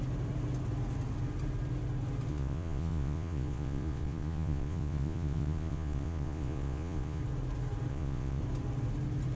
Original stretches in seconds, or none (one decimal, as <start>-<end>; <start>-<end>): 0.0-2.3; 7.2-7.9; 8.4-9.4